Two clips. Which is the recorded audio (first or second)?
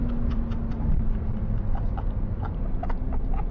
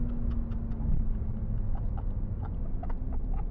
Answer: second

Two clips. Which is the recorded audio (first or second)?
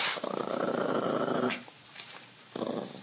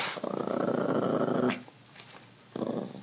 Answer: second